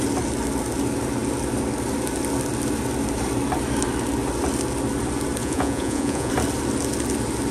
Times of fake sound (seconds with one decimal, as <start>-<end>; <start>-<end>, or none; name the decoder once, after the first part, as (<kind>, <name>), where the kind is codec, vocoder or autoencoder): 5.4-6.3 (vocoder, Vocos)